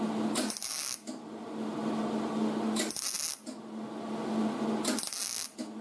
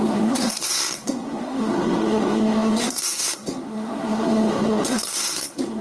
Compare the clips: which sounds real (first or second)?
first